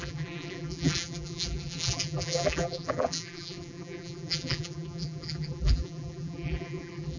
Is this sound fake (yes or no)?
yes